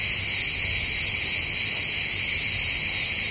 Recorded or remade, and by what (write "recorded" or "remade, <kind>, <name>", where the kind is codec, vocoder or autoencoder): recorded